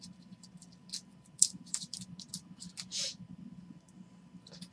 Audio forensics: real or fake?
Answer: real